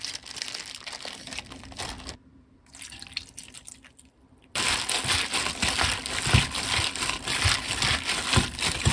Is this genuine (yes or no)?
yes